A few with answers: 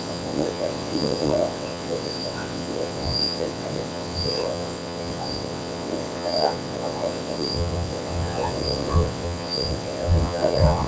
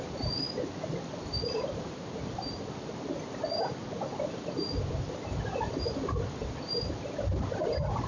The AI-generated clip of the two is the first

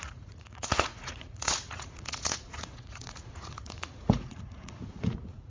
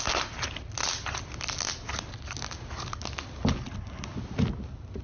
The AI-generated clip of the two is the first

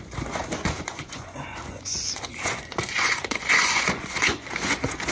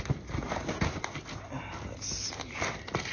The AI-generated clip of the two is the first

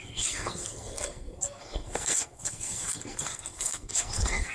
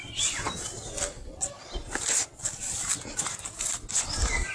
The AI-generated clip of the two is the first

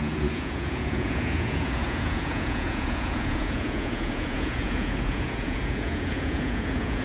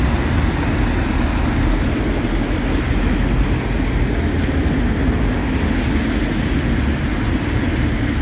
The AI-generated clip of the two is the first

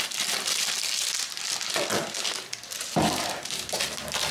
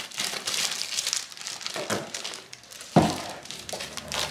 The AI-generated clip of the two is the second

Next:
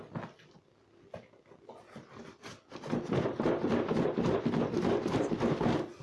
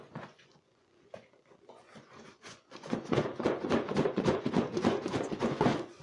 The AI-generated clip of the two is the second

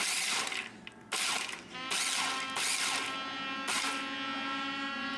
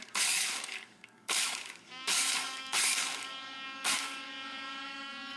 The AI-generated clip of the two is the second